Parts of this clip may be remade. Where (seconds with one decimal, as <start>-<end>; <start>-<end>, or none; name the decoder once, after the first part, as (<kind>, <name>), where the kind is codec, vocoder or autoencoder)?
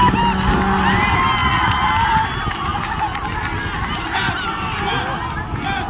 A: 1.4-1.9 (vocoder, Vocos)